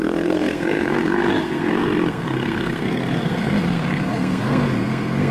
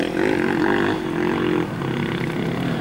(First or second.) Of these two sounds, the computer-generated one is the first